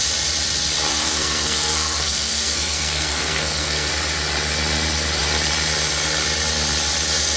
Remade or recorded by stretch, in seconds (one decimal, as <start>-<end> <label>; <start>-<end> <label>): 0.0-0.9 recorded; 0.9-3.9 remade; 3.9-7.4 recorded